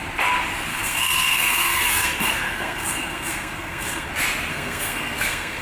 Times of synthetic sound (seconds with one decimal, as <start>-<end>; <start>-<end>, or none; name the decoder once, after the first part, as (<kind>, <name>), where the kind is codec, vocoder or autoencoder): 0.7-4.1 (codec, SNAC); 4.5-5.6